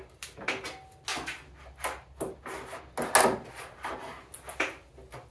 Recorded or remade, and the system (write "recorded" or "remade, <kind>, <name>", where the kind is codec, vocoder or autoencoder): recorded